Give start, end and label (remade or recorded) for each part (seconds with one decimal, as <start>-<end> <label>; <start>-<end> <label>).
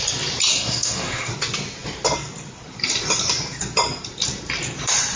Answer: 0.0-0.5 recorded; 0.5-1.3 remade; 1.3-5.2 recorded